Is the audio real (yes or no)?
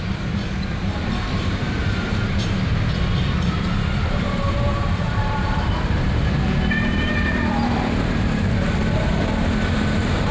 no